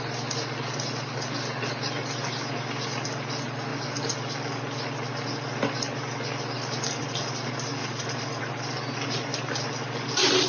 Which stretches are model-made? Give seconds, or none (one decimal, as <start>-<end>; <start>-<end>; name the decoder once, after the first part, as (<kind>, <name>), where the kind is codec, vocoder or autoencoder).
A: 7.8-8.4 (vocoder, BigVGAN v2)